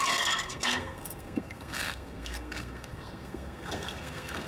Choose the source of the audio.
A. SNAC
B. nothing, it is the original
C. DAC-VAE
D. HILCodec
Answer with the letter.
A